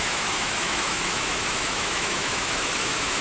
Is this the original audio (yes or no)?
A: no